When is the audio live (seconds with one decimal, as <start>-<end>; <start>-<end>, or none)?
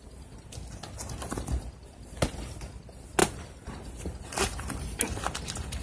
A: 0.0-5.8